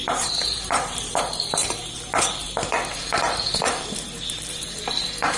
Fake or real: fake